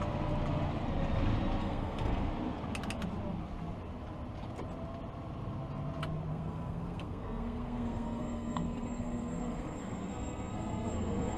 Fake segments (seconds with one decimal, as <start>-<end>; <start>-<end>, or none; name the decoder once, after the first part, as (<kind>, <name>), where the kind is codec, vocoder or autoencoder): 1.6-2.3 (codec, SNAC); 6.3-11.4